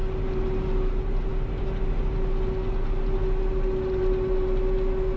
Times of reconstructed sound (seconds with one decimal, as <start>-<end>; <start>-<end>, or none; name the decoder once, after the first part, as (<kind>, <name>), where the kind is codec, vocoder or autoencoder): none